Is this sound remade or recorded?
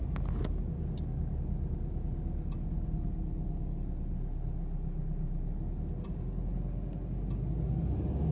recorded